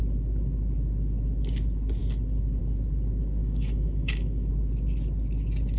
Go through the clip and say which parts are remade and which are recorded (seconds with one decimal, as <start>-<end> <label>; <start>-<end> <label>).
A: 0.0-3.4 recorded; 3.4-4.5 remade; 4.5-5.8 recorded